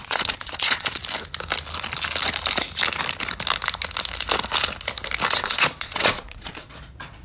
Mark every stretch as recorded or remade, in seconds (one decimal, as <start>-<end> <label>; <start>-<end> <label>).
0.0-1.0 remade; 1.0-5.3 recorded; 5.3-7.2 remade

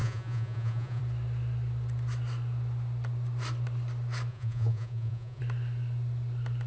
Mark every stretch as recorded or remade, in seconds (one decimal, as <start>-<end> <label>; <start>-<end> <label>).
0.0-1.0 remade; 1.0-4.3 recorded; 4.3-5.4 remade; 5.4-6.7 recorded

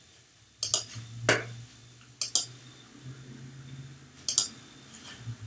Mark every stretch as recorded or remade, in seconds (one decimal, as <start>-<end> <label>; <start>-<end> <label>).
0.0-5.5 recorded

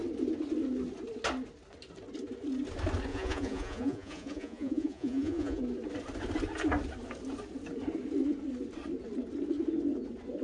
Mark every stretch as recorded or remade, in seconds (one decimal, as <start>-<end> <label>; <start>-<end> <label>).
0.0-3.1 recorded; 3.1-5.6 remade; 5.6-10.4 recorded